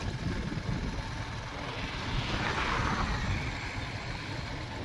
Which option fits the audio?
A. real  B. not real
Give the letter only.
A